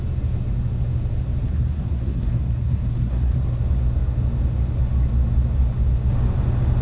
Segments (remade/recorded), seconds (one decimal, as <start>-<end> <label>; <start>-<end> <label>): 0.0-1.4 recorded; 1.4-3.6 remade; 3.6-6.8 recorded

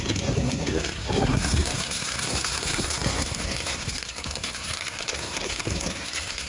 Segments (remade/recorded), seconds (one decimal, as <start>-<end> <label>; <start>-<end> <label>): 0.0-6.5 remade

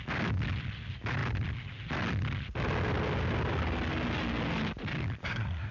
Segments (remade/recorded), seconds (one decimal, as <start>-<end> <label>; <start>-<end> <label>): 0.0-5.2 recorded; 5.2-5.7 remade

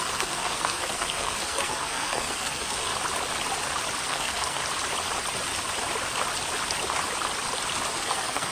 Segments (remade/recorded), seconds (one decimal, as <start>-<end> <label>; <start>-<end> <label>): 0.0-2.9 remade; 2.9-4.0 recorded; 4.0-4.6 remade; 4.6-7.9 recorded; 7.9-8.5 remade

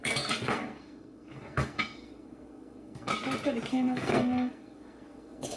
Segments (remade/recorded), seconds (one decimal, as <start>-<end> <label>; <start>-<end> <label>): 0.0-3.1 remade; 3.1-3.7 recorded; 3.7-5.6 remade

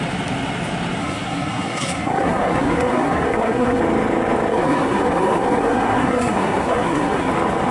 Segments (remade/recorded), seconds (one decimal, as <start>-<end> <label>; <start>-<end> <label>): 0.0-1.0 recorded; 1.0-3.8 remade; 3.8-4.5 recorded; 4.5-7.3 remade; 7.3-7.7 recorded

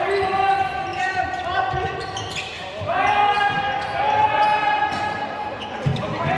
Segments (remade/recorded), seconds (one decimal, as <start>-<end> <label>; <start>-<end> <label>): 0.0-6.4 recorded

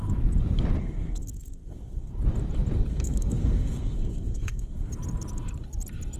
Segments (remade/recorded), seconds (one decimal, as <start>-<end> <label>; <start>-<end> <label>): 0.0-0.8 recorded; 0.8-2.1 remade; 2.1-2.9 recorded; 2.9-4.9 remade; 4.9-6.2 recorded